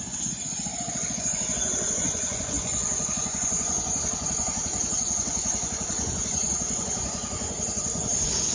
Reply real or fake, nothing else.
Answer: fake